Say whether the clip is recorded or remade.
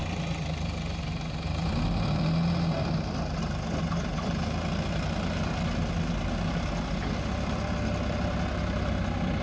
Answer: recorded